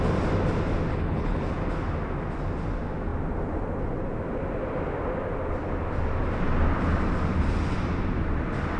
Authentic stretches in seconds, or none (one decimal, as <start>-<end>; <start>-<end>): 0.0-0.9; 1.5-8.8